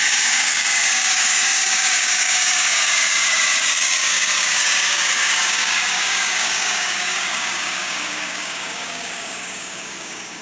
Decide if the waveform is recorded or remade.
remade